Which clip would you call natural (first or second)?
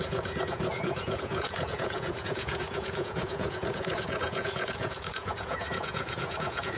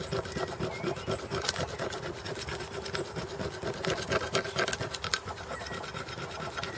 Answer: second